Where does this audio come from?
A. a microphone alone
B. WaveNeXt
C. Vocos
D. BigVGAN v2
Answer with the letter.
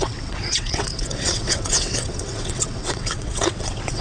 B